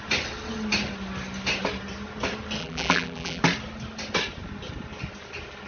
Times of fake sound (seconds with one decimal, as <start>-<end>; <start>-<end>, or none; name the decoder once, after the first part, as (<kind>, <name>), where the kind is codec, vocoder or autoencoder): 2.6-3.4 (vocoder, BigVGAN v2)